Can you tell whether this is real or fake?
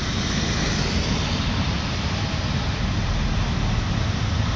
real